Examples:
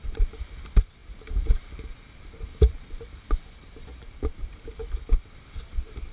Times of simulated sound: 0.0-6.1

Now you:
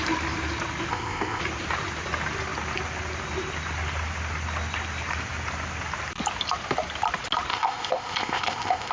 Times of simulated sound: 0.9-1.4; 7.5-8.9

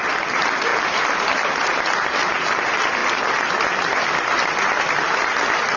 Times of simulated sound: none

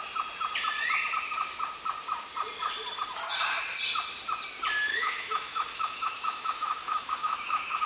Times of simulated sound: 4.9-7.9